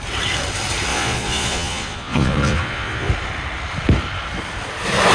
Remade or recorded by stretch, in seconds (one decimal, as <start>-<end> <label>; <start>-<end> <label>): 0.0-0.9 recorded; 0.9-3.1 remade; 3.1-5.1 recorded